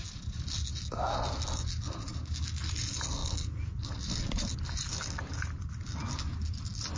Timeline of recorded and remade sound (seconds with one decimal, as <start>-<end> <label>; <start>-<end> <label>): 0.0-7.0 recorded